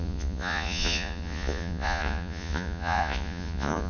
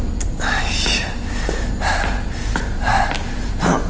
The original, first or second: second